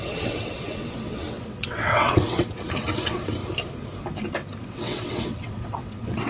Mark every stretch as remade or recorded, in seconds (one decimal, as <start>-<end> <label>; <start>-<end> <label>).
0.0-3.4 remade; 3.4-4.6 recorded; 4.6-6.3 remade